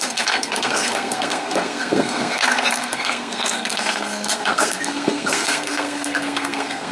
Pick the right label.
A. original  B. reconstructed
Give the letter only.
B